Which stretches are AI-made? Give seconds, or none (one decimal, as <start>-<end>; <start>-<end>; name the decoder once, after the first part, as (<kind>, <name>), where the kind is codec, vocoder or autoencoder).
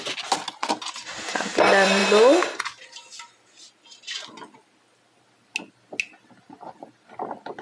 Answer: none